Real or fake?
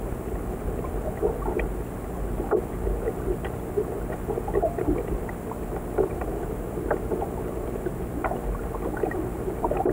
real